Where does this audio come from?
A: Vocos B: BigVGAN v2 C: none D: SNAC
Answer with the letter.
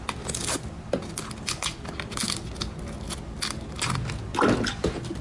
C